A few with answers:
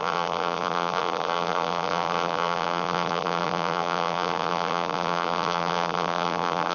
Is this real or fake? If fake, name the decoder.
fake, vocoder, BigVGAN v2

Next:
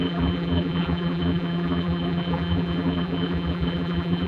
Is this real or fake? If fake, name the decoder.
fake, vocoder, BigVGAN v2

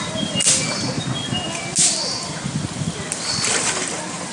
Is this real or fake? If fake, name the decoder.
real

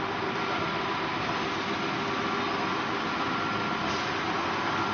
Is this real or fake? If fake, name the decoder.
real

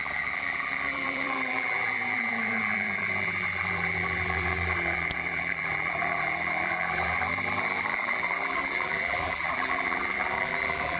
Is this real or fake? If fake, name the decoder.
fake, vocoder, BigVGAN v2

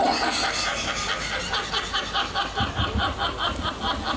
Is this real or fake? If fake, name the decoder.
real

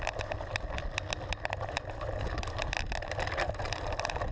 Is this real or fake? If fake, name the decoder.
real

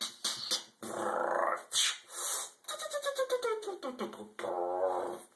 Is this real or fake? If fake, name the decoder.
real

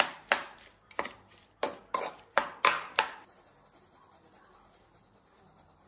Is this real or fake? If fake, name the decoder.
fake, vocoder, BigVGAN v2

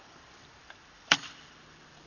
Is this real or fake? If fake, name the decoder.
fake, vocoder, BigVGAN v2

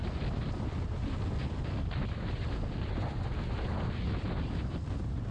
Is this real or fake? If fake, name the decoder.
real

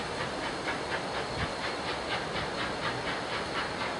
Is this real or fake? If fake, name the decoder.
real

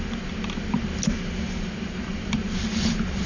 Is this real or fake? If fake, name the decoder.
fake, vocoder, BigVGAN v2